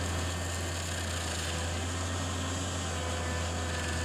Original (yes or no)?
yes